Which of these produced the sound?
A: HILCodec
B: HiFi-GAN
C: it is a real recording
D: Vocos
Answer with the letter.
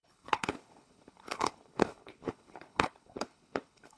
A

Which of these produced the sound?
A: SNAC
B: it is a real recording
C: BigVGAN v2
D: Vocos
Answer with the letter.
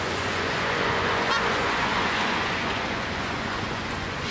D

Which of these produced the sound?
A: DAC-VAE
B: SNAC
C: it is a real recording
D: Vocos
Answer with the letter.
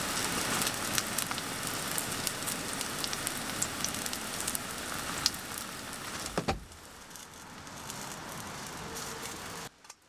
C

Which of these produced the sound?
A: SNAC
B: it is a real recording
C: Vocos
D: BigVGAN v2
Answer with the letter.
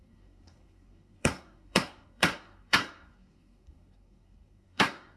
A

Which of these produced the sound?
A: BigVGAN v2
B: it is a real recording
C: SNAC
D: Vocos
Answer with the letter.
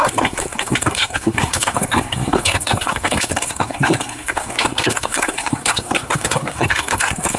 C